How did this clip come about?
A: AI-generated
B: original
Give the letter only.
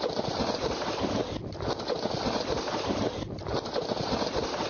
B